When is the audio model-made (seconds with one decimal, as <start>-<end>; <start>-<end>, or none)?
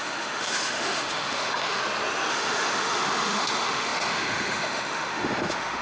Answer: 0.0-1.8; 2.3-5.8